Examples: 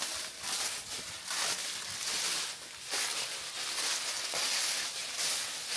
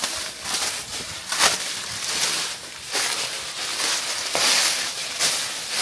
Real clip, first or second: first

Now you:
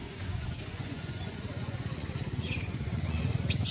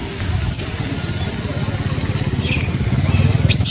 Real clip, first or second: second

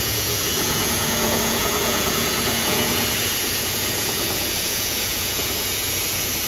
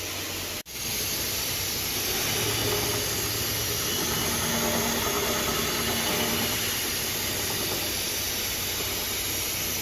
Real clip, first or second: second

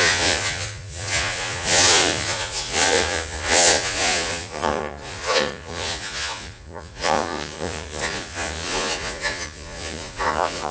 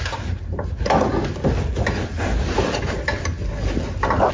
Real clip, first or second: second